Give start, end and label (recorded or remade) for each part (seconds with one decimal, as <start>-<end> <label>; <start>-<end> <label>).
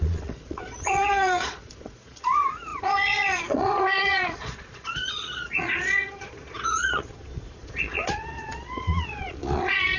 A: 0.0-10.0 remade